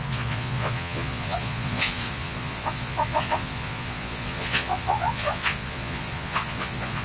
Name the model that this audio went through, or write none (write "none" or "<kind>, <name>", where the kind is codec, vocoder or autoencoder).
vocoder, Vocos